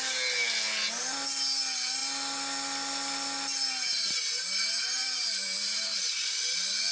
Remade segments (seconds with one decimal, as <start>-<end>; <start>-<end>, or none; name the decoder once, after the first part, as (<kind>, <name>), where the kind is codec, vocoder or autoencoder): 5.0-6.3 (vocoder, BigVGAN v2)